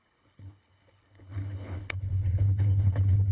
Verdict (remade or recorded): remade